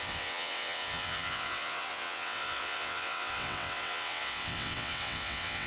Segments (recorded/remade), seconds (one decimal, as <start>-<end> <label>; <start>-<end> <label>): 0.0-5.7 remade